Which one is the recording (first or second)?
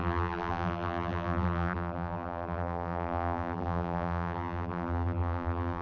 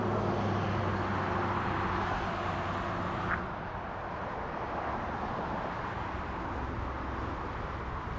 second